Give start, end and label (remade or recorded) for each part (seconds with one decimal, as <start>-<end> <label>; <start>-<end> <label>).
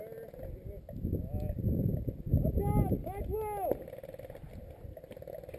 0.0-5.6 recorded